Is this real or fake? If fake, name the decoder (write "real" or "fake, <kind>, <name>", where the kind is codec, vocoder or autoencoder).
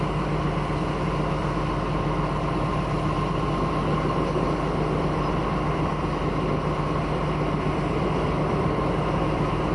real